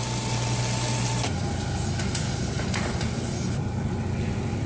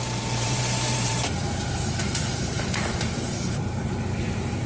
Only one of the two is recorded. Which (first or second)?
first